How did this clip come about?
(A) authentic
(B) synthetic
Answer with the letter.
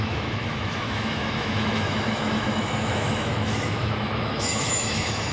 B